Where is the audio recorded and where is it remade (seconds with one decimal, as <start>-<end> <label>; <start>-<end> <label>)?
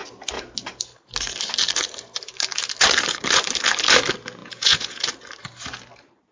0.0-4.4 recorded; 4.4-5.0 remade; 5.0-6.3 recorded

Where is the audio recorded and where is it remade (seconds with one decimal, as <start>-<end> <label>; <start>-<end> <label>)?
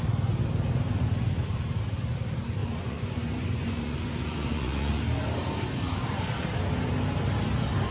0.0-2.6 recorded; 2.6-5.0 remade; 5.0-7.9 recorded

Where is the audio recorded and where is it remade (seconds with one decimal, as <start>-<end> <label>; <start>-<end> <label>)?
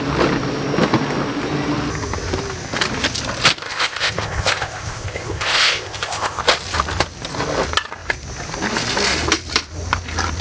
0.0-3.6 recorded; 3.6-6.4 remade; 6.4-10.4 recorded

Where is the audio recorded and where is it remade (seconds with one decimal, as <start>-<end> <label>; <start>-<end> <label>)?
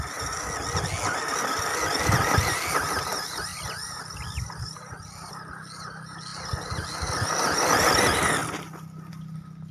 0.0-3.5 recorded; 3.5-5.3 remade; 5.3-6.3 recorded; 6.3-7.4 remade; 7.4-9.7 recorded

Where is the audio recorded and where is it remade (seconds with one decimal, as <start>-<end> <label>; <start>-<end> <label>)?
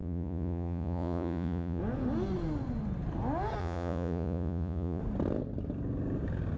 0.0-1.8 remade; 1.8-3.6 recorded; 3.6-5.0 remade; 5.0-6.6 recorded